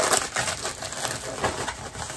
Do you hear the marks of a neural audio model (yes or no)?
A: no